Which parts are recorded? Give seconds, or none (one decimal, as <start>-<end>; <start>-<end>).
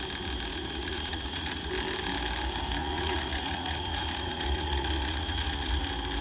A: 0.0-0.5; 1.7-2.8; 5.8-6.2